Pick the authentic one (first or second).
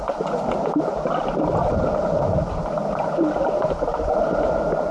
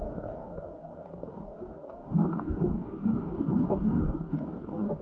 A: first